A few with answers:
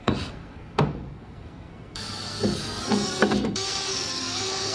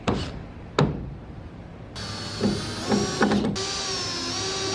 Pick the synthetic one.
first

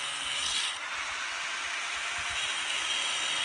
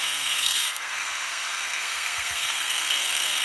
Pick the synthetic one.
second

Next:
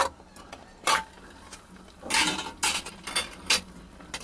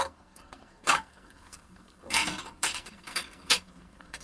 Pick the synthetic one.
second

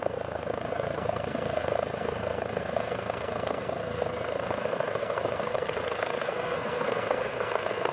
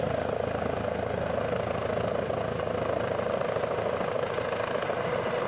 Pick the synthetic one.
first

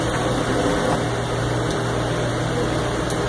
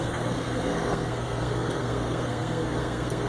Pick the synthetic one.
second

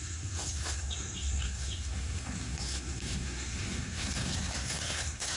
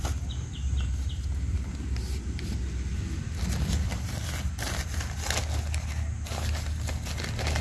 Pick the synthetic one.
first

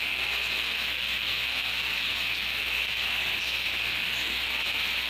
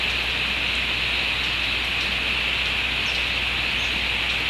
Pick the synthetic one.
first